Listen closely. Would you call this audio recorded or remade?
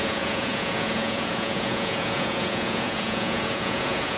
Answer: remade